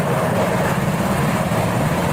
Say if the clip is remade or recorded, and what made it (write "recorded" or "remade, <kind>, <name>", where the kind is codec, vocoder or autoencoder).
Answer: remade, vocoder, BigVGAN v2